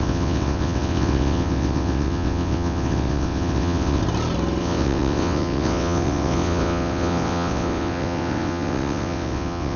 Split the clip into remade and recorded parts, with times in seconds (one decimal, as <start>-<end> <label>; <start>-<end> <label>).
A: 0.0-4.0 remade; 4.0-4.6 recorded; 4.6-9.8 remade